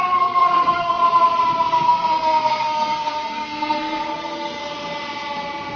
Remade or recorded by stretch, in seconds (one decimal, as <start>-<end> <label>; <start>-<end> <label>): 0.0-1.0 remade; 1.0-1.7 recorded; 1.7-4.6 remade; 4.6-5.8 recorded